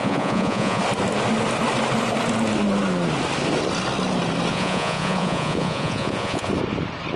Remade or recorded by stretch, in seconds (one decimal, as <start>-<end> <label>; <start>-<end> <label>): 0.0-0.8 remade; 0.8-4.5 recorded; 4.5-6.5 remade; 6.5-7.2 recorded